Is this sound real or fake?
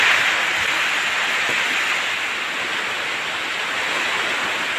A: real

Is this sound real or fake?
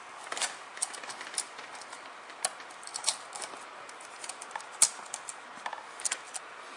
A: real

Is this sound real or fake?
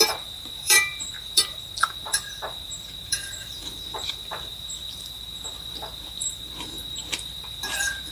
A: fake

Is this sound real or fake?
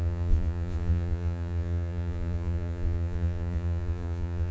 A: fake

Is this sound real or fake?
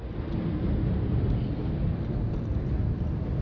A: real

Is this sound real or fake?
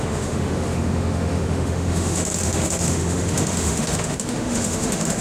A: fake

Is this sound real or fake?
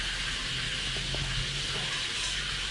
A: real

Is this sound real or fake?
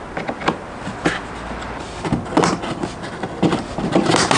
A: real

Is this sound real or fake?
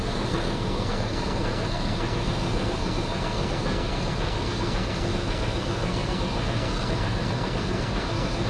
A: fake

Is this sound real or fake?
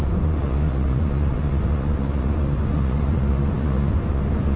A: fake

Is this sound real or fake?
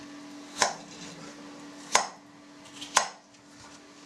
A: real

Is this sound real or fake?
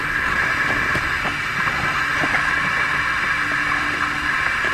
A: real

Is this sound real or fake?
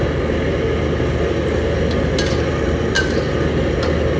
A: real